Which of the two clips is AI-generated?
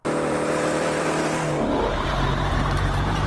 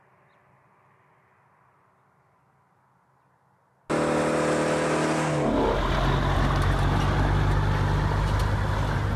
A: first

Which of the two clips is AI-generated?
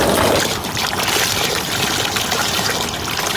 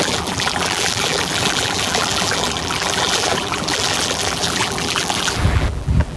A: second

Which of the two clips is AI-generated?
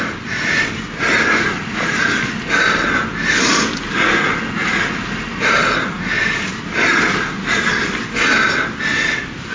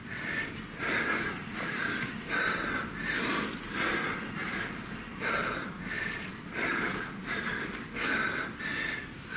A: second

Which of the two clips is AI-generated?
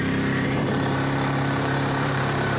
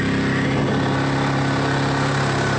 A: first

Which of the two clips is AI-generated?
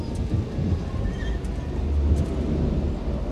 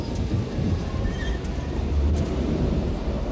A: second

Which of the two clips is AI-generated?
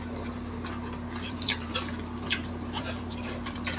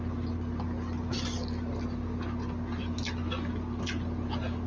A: first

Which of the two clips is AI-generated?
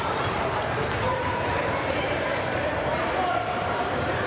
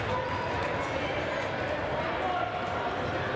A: first